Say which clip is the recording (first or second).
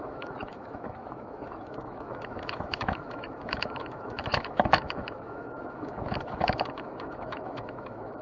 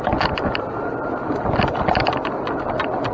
second